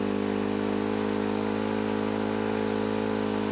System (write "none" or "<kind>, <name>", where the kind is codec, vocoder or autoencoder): none